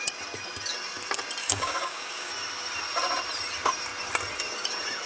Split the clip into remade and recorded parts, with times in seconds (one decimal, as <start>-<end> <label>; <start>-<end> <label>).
0.0-1.4 recorded; 1.4-2.3 remade; 2.3-5.1 recorded